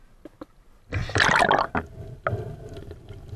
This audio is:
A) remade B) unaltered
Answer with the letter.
B